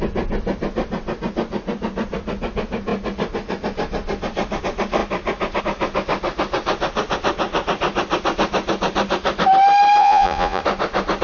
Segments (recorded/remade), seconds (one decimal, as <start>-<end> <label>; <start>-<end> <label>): 0.0-10.0 recorded; 10.0-10.6 remade; 10.6-11.2 recorded